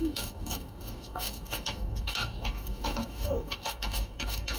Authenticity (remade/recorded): remade